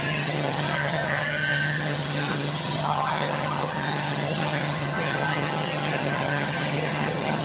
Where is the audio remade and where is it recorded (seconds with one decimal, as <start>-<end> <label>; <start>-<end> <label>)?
0.0-7.4 remade